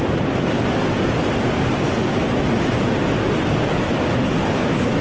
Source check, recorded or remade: recorded